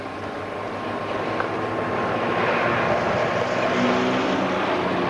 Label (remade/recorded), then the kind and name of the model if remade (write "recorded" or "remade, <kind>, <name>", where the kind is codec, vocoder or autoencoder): recorded